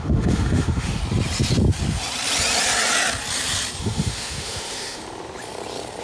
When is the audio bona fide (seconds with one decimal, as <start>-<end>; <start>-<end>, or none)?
1.0-3.8; 5.0-6.0